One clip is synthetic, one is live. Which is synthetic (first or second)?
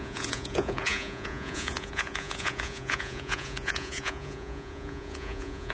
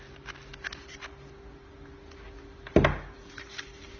first